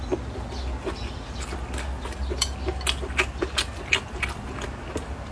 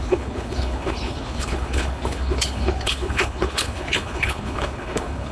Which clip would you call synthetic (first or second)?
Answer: second